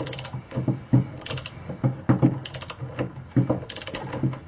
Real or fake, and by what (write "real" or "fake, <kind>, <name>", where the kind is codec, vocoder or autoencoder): real